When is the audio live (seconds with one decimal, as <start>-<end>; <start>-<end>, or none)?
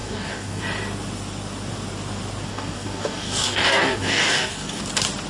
0.6-2.5; 4.8-5.3